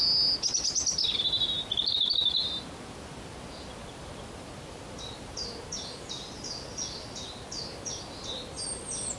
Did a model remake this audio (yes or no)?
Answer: no